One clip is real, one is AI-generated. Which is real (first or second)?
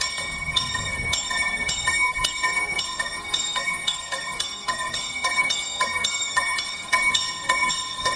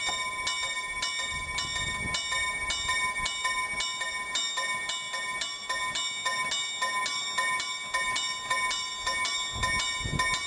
second